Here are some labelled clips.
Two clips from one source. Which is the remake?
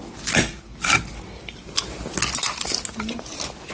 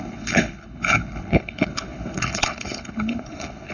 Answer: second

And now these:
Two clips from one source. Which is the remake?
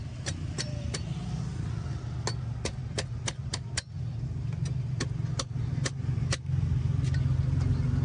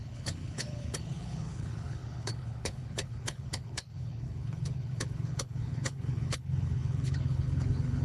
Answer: second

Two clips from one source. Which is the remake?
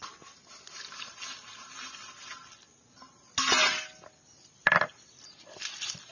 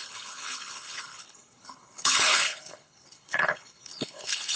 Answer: second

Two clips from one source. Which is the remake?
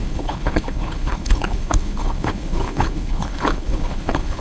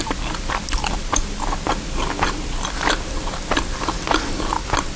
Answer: first